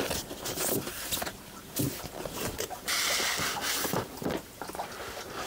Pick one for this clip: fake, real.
real